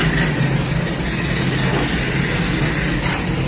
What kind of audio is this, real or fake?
real